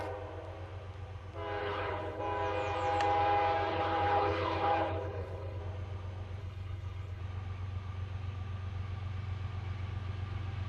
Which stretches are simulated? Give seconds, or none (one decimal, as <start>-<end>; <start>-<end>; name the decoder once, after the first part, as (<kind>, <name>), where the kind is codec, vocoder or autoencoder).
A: 1.6-2.2 (codec, HILCodec); 3.7-5.6; 6.4-7.2